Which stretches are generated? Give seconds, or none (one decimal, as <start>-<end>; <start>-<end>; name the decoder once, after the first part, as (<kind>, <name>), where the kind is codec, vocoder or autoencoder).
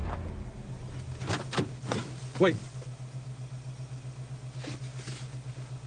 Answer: none